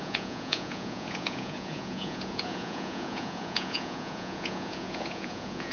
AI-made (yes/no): yes